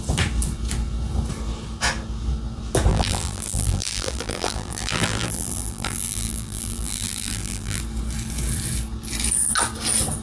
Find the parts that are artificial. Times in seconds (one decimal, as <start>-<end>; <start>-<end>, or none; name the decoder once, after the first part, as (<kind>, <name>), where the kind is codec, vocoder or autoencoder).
2.9-7.8 (vocoder, BigVGAN v2)

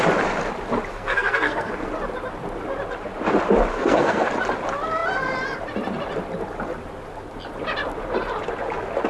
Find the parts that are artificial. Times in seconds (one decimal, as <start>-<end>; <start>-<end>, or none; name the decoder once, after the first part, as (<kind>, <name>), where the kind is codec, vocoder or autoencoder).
0.9-1.9 (codec, SNAC); 3.7-4.3

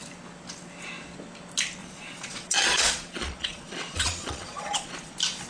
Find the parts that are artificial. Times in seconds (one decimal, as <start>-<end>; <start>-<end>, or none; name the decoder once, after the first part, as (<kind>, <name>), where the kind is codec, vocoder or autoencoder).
1.8-5.1 (vocoder, Vocos)

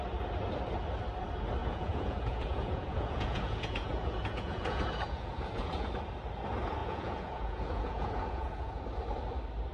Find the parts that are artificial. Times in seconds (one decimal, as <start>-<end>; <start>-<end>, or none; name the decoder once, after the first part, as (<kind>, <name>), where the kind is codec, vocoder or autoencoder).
1.6-5.9 (vocoder, Vocos); 6.8-8.8